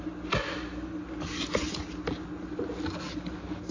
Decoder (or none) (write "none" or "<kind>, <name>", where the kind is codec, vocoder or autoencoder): none